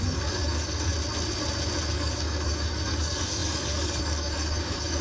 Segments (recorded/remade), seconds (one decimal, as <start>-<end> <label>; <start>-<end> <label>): 0.0-0.9 remade; 0.9-1.9 recorded; 1.9-5.0 remade